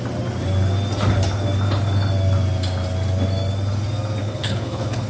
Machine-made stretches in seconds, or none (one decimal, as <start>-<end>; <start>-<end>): 4.2-5.1